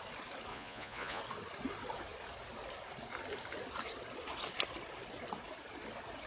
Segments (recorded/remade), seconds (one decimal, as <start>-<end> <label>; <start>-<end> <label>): 0.0-0.5 recorded; 0.5-1.2 remade; 1.2-6.3 recorded